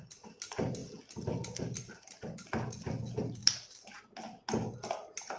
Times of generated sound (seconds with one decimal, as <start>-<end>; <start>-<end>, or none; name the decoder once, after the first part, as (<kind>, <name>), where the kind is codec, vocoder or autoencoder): none